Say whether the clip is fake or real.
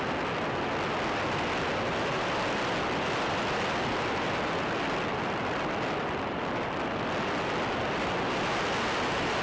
real